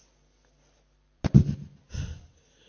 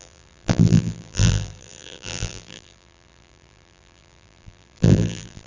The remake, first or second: second